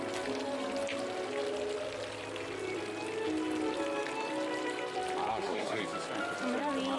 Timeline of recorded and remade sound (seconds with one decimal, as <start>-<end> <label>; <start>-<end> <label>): 0.0-5.3 recorded; 5.3-5.8 remade; 5.8-7.0 recorded